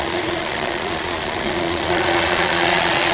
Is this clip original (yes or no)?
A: no